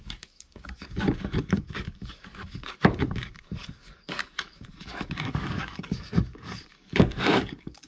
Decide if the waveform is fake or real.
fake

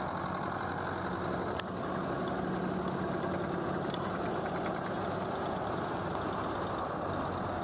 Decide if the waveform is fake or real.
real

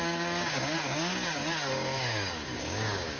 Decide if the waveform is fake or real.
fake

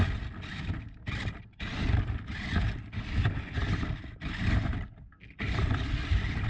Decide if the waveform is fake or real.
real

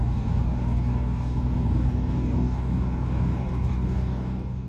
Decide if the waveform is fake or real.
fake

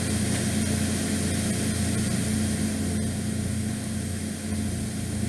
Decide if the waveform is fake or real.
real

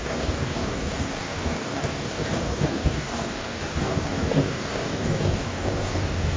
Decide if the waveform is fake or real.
fake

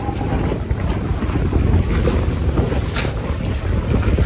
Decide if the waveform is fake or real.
real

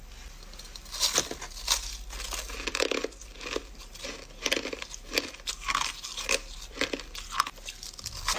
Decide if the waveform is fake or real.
real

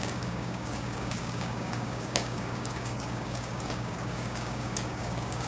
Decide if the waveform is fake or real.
fake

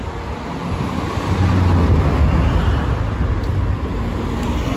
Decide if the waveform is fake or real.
real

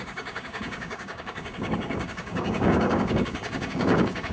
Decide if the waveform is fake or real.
fake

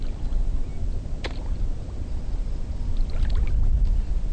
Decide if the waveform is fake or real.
real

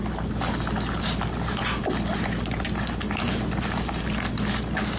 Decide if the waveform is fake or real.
real